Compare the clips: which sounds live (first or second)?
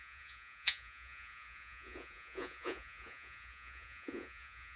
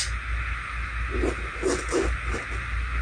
second